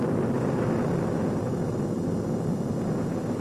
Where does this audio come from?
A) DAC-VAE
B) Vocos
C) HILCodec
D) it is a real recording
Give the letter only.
D